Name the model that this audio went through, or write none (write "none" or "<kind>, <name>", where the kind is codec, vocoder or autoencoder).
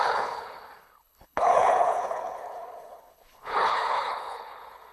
codec, HILCodec